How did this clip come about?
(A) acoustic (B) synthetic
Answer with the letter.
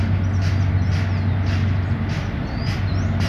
A